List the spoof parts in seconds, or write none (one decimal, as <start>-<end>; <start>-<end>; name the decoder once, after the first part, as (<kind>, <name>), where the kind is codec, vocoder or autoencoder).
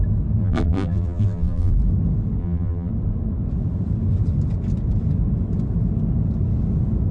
0.4-1.7 (vocoder, BigVGAN v2); 2.4-2.9